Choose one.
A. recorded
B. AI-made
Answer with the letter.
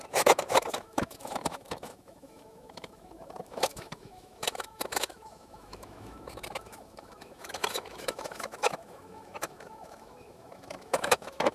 B